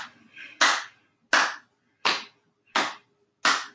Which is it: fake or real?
real